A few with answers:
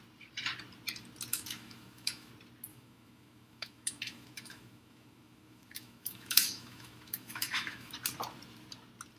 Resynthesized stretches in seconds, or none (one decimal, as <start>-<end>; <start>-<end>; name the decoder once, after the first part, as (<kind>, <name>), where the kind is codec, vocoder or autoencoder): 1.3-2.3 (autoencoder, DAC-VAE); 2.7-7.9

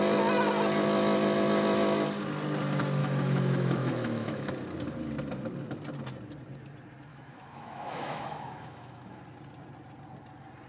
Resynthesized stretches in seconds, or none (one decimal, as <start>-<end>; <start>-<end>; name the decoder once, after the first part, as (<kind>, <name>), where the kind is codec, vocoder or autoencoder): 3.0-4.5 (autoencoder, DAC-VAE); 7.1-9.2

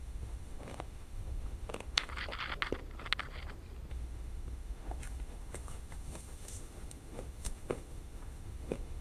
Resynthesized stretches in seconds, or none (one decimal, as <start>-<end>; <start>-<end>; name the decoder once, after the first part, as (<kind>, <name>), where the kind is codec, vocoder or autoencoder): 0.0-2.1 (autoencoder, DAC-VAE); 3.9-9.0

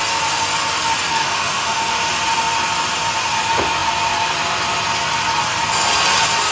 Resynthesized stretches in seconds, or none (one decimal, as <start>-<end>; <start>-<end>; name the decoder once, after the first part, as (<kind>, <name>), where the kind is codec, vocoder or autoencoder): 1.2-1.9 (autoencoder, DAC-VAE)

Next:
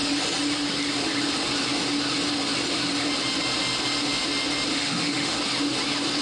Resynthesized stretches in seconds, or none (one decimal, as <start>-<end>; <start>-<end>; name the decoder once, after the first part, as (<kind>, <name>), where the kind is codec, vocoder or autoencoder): 4.7-5.4 (autoencoder, DAC-VAE)